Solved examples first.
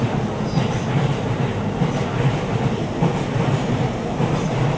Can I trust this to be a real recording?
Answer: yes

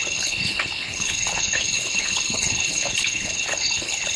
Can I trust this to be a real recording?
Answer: no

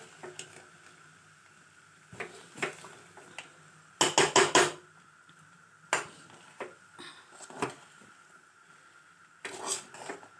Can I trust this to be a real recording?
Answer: yes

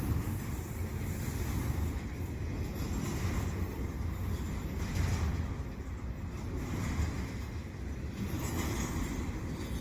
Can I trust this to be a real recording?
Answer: yes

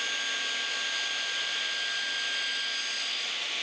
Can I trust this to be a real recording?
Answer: yes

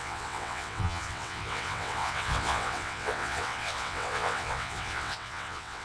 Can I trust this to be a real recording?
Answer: no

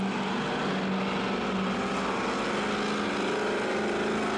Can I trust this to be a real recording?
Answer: yes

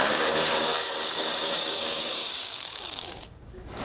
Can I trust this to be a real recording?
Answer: no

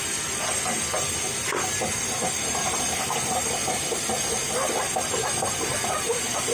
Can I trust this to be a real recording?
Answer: no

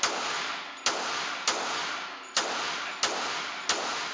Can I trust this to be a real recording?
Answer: yes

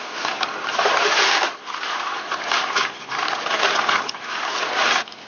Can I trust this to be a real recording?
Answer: yes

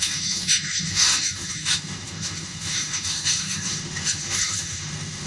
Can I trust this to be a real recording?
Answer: no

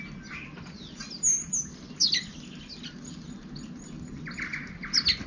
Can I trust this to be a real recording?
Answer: yes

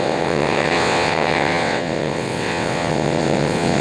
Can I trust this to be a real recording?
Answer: no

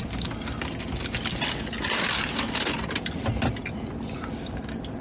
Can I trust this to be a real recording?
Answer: yes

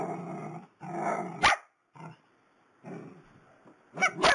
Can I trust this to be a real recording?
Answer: yes